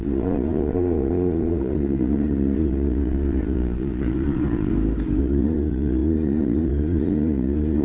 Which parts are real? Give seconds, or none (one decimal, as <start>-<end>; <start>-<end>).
4.7-5.2